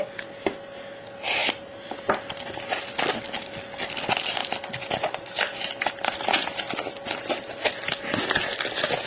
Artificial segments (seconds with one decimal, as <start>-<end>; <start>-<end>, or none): 1.4-3.0; 4.4-5.6